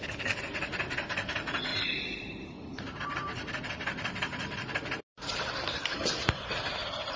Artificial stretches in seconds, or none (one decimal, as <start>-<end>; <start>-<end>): 1.7-5.9